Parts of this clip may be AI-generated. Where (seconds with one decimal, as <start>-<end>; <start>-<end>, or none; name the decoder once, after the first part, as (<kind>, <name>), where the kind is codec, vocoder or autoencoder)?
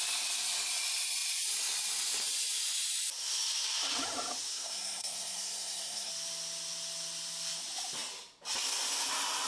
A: 4.5-6.1 (codec, SNAC)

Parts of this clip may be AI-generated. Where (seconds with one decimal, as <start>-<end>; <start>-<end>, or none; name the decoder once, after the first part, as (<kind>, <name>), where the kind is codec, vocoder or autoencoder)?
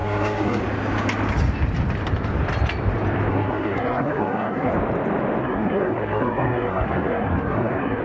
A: 0.0-0.6 (codec, SNAC); 3.3-4.7; 5.4-8.0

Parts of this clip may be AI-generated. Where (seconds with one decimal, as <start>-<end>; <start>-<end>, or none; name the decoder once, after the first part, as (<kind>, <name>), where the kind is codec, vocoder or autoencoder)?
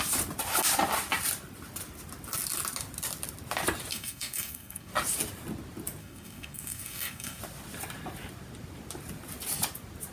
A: 3.9-4.9 (codec, SNAC); 6.0-7.4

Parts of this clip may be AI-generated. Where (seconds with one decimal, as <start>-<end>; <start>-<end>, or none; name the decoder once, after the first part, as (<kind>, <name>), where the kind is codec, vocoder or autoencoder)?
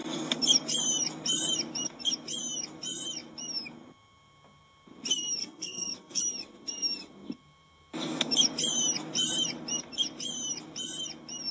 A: 5.4-6.2 (codec, SNAC)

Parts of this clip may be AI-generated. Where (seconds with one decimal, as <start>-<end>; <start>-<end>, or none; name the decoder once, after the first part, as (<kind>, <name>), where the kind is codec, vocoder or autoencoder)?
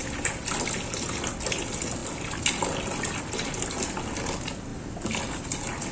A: none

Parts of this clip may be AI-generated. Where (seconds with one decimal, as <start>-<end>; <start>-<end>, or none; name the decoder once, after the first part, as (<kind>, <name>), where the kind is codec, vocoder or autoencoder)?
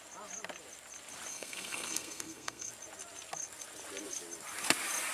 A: 1.3-2.7 (codec, SNAC)